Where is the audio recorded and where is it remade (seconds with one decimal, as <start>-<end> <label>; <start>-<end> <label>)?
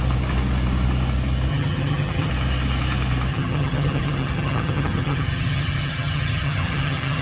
0.0-1.5 recorded; 1.5-2.3 remade; 2.3-3.3 recorded; 3.3-7.2 remade